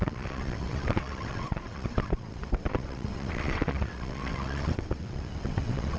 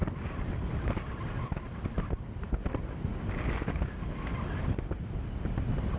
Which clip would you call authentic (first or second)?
second